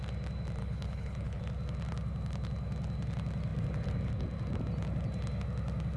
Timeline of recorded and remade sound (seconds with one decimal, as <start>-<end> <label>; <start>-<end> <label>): 0.0-0.6 recorded; 0.6-1.4 remade; 1.4-6.0 recorded